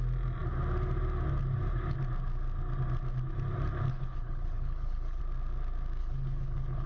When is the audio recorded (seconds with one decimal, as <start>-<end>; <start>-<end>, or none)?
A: 0.0-3.9; 5.2-6.0